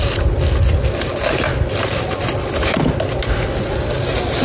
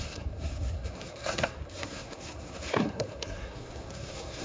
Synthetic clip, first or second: second